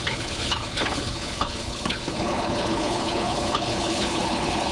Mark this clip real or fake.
fake